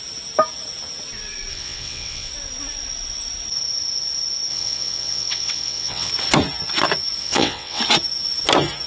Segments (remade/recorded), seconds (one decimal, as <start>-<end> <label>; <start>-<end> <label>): 0.0-1.5 recorded; 1.5-2.3 remade; 2.3-4.5 recorded; 4.5-6.1 remade; 6.1-7.2 recorded; 7.2-7.8 remade; 7.8-8.9 recorded